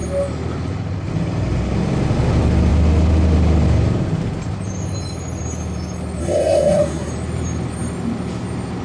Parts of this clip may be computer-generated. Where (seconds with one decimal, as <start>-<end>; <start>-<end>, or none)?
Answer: 6.2-7.1